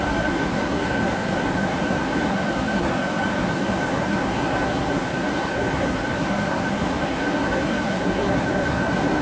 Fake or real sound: fake